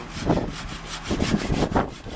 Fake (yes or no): no